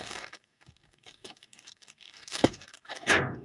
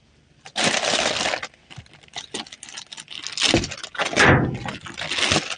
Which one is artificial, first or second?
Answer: first